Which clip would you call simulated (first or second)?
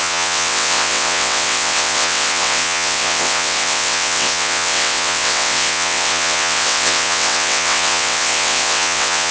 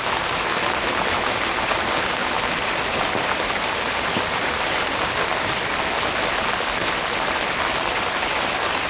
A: first